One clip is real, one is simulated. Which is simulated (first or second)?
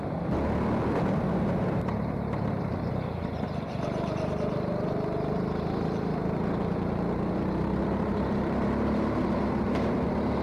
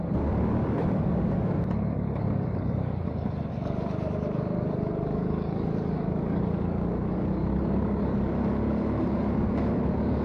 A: second